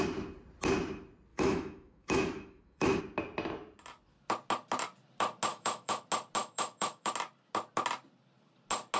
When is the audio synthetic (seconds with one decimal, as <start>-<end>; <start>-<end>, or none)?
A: 1.3-3.0; 5.5-6.0; 6.4-7.1